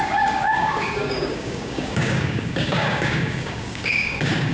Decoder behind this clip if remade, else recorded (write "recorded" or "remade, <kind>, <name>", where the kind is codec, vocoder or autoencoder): remade, codec, DAC